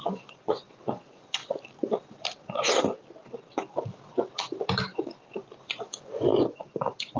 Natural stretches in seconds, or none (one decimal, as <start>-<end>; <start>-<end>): 1.4-5.6